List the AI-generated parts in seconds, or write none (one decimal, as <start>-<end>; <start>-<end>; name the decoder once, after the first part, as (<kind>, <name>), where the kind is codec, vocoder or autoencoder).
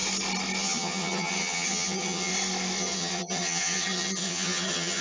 0.6-2.3 (vocoder, HiFi-GAN); 2.8-5.0